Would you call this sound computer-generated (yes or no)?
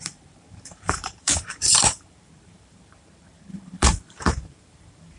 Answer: yes